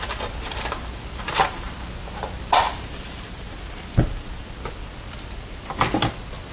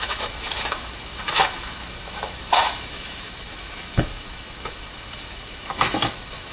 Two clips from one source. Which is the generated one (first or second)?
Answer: second